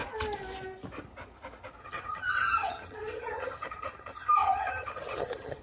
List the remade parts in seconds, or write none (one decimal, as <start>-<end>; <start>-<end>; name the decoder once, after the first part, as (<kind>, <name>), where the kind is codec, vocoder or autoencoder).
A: 1.8-5.6 (vocoder, HiFi-GAN)